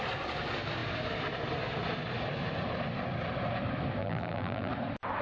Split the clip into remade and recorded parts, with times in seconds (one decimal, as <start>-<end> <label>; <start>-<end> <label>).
0.0-4.0 recorded; 4.0-4.7 remade; 4.7-5.2 recorded

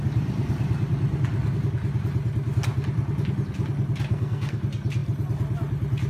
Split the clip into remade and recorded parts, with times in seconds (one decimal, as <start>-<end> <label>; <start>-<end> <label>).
0.0-4.1 recorded; 4.1-4.6 remade; 4.6-6.1 recorded

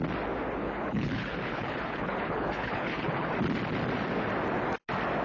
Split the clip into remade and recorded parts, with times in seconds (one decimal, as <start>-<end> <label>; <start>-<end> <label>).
0.0-0.6 recorded; 0.6-3.3 remade; 3.3-5.2 recorded

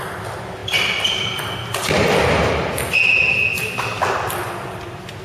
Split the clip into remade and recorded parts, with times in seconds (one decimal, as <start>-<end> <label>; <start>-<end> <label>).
0.0-5.2 recorded

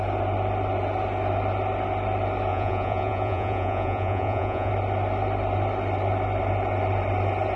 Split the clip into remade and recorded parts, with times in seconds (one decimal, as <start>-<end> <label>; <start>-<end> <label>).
0.0-2.5 recorded; 2.5-4.7 remade; 4.7-7.6 recorded

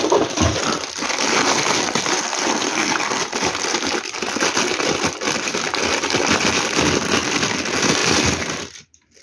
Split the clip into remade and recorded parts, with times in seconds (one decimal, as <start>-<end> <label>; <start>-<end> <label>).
0.0-2.2 recorded; 2.2-3.2 remade; 3.2-9.2 recorded

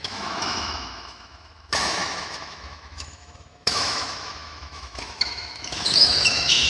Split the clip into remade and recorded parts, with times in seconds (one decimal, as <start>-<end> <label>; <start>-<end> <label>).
0.0-6.7 remade

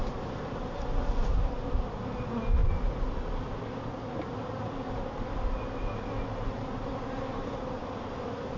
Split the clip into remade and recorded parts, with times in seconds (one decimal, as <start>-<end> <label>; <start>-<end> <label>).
0.0-8.6 recorded